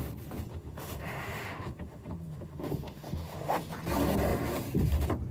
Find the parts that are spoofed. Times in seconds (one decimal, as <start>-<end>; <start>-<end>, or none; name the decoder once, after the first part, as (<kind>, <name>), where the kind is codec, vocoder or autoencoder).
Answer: 0.5-3.7 (autoencoder, DAC-VAE)